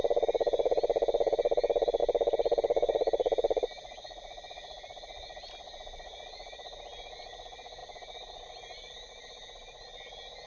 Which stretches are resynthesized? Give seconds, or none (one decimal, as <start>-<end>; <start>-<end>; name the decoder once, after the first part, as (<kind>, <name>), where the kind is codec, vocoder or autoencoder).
2.0-5.5 (vocoder, BigVGAN v2); 7.8-9.1